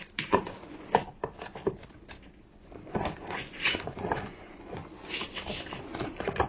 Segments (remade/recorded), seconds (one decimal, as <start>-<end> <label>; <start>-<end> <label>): 0.0-1.2 remade; 1.2-2.5 recorded; 2.5-4.8 remade; 4.8-5.8 recorded; 5.8-6.5 remade